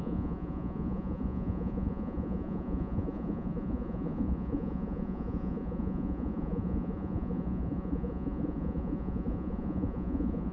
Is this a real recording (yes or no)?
no